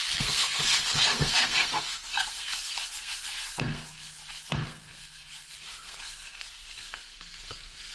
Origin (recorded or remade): remade